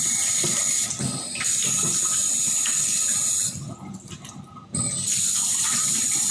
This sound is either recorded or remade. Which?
recorded